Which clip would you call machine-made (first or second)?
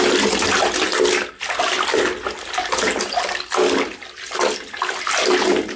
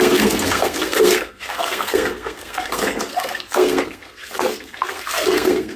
second